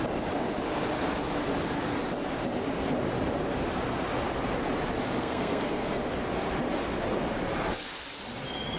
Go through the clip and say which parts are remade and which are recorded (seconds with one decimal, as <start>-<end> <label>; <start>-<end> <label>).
0.0-5.2 recorded; 5.2-6.0 remade; 6.0-8.8 recorded